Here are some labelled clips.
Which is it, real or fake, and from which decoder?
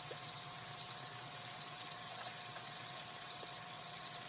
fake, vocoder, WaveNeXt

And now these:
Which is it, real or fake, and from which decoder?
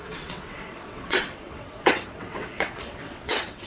fake, vocoder, WaveNeXt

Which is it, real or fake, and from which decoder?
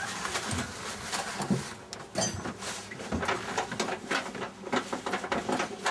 real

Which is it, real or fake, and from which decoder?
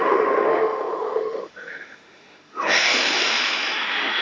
fake, autoencoder, DAC-VAE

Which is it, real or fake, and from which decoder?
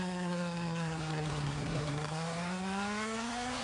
fake, codec, SNAC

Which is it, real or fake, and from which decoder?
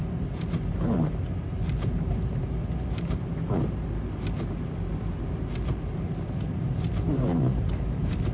real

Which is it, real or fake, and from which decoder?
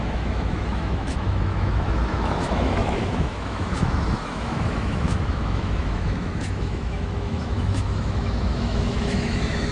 fake, autoencoder, DAC-VAE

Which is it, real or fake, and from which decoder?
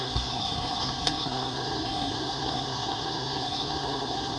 fake, codec, SNAC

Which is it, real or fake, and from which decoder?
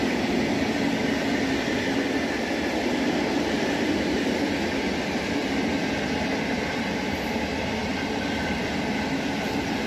real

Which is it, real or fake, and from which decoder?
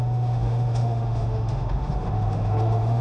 fake, autoencoder, DAC-VAE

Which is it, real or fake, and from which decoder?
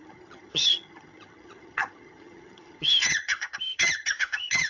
fake, vocoder, HiFi-GAN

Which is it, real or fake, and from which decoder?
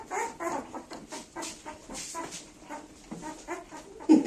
real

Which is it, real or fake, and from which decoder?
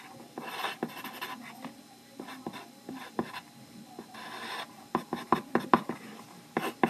real